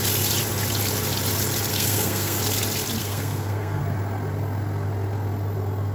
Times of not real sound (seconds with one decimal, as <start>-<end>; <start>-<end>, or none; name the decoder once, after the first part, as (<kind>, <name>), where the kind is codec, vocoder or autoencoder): 1.7-2.4 (codec, SNAC); 3.0-3.8